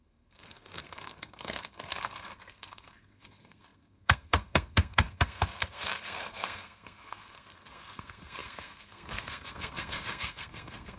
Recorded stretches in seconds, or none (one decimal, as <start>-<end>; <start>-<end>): none